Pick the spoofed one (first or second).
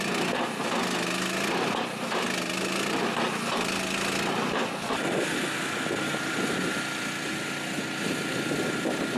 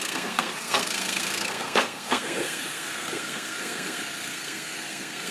second